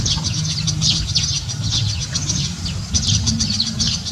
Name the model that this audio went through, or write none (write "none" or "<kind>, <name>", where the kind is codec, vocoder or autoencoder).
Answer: none